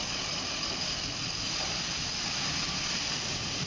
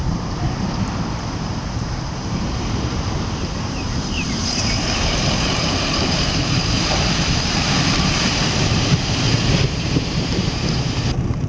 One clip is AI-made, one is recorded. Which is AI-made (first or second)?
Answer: second